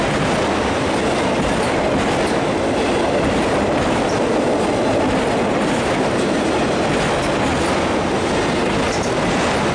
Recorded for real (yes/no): yes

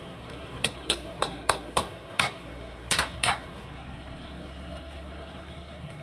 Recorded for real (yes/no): no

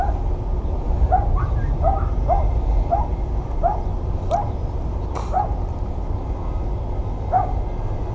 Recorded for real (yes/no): yes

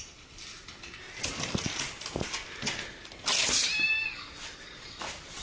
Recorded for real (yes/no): yes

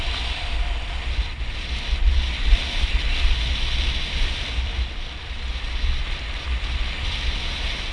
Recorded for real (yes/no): yes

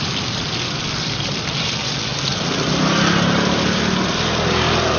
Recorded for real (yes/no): yes